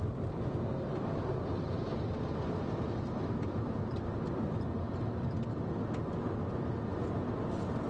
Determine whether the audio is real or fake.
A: real